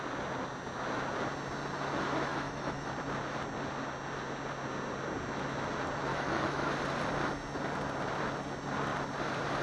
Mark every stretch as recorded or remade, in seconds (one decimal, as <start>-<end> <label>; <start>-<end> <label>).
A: 0.0-2.3 recorded; 2.3-2.9 remade; 2.9-6.1 recorded; 6.1-6.7 remade; 6.7-9.6 recorded